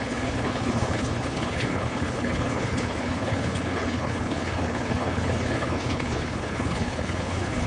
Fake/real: fake